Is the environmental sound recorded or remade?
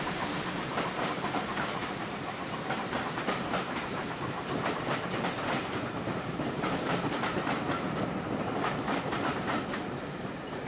remade